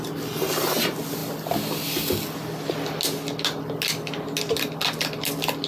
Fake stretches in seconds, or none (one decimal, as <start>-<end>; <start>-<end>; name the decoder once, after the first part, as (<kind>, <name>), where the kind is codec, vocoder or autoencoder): none